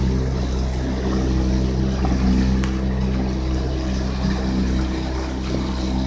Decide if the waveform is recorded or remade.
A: recorded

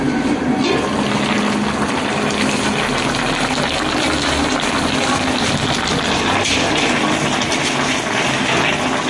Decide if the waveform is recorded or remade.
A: recorded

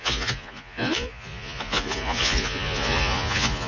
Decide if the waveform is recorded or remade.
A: remade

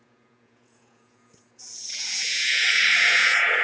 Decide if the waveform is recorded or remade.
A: remade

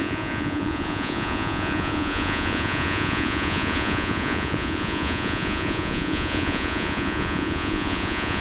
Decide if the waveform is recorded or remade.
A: remade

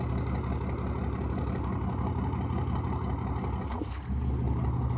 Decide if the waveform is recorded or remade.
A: recorded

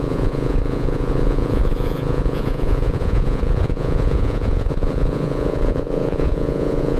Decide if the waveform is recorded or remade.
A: remade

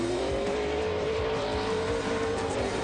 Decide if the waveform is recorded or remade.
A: recorded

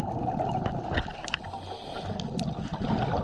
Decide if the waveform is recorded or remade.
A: recorded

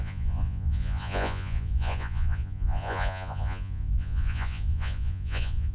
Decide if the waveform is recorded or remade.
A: remade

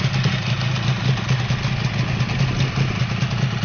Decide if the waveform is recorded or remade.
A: recorded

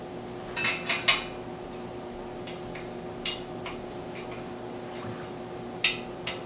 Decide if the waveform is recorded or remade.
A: recorded